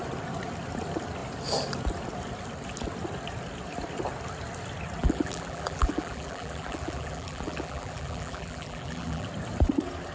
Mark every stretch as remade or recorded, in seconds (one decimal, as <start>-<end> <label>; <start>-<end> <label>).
0.0-5.0 recorded; 5.0-9.3 remade; 9.3-10.1 recorded